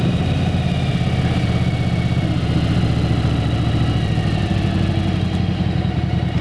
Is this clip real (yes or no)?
yes